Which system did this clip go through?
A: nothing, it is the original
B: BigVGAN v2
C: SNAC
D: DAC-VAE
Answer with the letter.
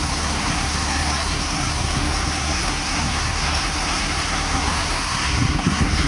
C